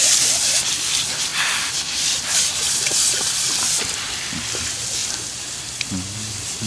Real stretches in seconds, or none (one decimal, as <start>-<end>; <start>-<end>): 0.0-6.7